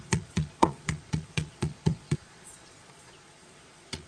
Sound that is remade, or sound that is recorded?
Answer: remade